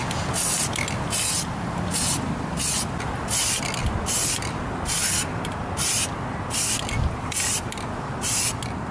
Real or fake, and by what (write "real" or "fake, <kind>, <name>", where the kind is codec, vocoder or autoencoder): real